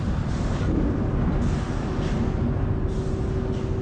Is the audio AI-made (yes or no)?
no